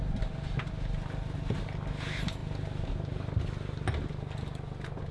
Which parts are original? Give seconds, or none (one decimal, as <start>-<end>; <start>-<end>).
0.7-5.1